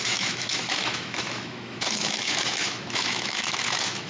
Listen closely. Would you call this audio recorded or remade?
remade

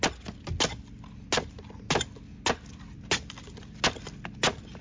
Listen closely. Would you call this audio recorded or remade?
recorded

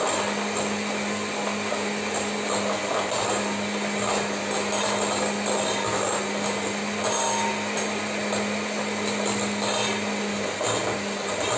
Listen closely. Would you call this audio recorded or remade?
recorded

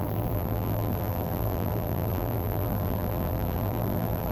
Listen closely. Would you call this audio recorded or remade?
remade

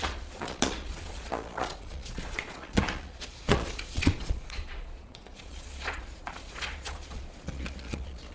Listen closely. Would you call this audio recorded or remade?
remade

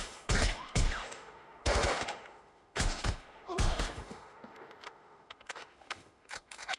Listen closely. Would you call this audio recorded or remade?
remade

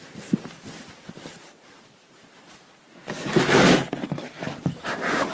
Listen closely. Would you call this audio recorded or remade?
remade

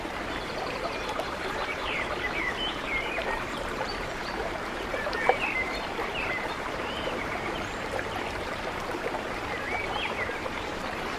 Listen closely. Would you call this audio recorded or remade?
remade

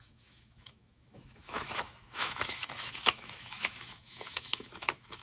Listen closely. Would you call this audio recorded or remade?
remade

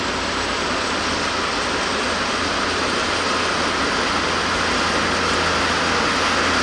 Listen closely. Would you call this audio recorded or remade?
recorded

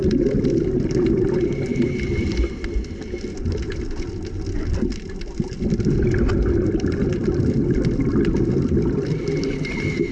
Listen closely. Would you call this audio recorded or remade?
recorded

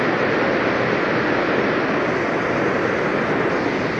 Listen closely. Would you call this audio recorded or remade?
recorded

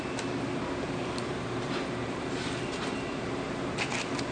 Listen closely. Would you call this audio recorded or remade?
recorded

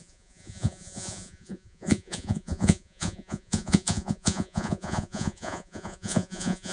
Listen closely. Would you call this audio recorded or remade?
remade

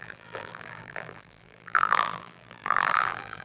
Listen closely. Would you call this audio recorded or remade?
remade